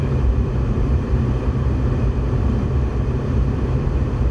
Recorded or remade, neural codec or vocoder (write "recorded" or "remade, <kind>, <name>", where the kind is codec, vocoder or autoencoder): remade, vocoder, BigVGAN v2